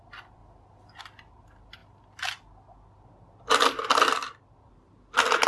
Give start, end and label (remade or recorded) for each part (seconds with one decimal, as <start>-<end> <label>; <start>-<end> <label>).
0.0-0.4 remade; 0.4-1.0 recorded; 1.0-1.8 remade; 1.8-3.4 recorded; 3.4-5.5 remade

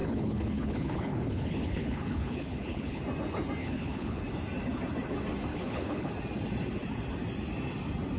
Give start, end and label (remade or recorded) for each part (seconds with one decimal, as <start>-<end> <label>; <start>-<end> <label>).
0.0-3.0 remade; 3.0-3.6 recorded; 3.6-4.2 remade; 4.2-5.5 recorded; 5.5-6.1 remade; 6.1-8.2 recorded

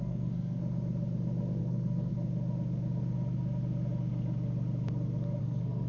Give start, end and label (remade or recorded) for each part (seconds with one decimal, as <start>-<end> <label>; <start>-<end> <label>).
0.0-0.6 remade; 0.6-1.6 recorded; 1.6-2.1 remade; 2.1-5.4 recorded; 5.4-5.9 remade

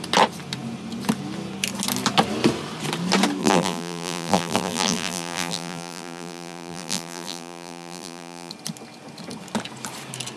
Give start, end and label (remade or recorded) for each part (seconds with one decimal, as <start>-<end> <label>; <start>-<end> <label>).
0.0-3.4 recorded; 3.4-8.5 remade; 8.5-10.4 recorded

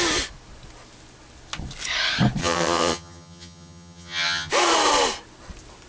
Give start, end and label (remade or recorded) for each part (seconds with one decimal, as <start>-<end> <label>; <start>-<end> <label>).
0.0-2.4 recorded; 2.4-4.5 remade; 4.5-5.9 recorded

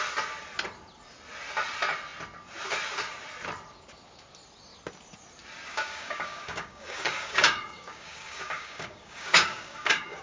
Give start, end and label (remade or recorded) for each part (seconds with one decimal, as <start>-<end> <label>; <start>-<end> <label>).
0.0-5.7 recorded; 5.7-10.2 remade

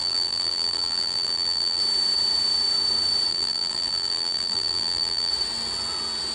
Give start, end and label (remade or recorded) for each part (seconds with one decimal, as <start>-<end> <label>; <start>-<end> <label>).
0.0-1.8 remade; 1.8-3.3 recorded; 3.3-5.3 remade; 5.3-6.3 recorded